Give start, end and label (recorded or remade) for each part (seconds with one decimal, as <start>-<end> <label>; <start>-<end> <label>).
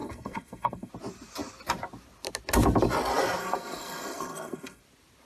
0.0-0.9 remade; 0.9-3.4 recorded; 3.4-4.8 remade; 4.8-5.3 recorded